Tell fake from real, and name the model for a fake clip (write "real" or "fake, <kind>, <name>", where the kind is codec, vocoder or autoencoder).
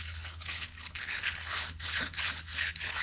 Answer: fake, codec, HILCodec